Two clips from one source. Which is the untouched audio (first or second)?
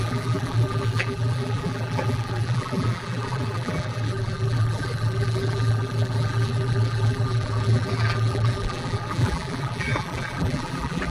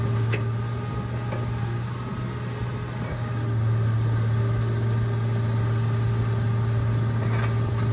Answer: second